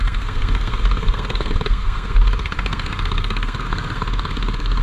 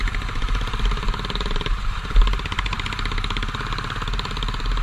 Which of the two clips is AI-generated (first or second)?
first